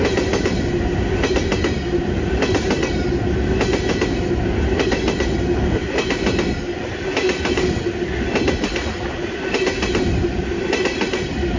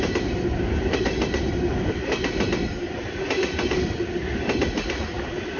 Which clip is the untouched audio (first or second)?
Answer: first